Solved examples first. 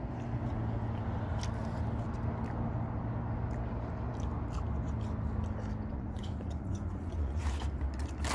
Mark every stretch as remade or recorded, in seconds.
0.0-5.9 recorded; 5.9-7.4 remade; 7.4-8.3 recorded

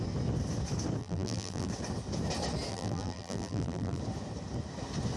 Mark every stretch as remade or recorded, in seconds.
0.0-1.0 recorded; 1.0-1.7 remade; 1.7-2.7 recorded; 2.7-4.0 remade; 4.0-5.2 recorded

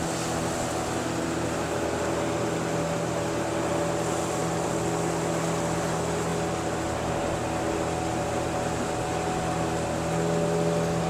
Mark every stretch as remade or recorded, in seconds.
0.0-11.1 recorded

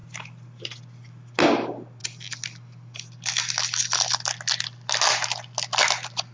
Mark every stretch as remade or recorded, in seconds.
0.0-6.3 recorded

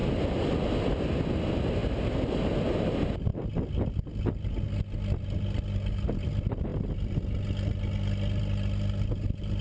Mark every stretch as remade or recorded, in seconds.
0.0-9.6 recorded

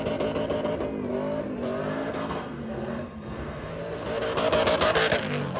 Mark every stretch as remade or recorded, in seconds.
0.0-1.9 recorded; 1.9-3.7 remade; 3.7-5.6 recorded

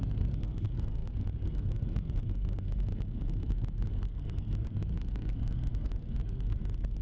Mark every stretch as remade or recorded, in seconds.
0.0-7.0 remade

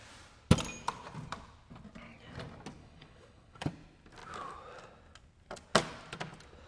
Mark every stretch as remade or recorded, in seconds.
0.0-2.8 recorded; 2.8-3.7 remade; 3.7-6.7 recorded